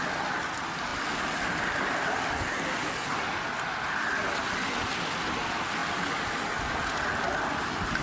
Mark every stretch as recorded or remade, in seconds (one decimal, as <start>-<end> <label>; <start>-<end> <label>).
0.0-8.0 recorded